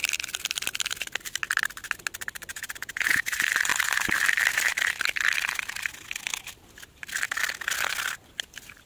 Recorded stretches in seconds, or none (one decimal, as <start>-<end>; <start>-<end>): 0.0-2.5; 3.2-8.9